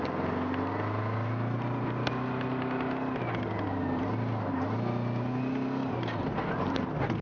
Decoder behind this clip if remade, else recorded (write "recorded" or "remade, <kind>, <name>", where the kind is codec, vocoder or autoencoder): recorded